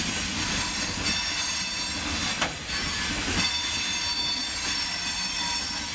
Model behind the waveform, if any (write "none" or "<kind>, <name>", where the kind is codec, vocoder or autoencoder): none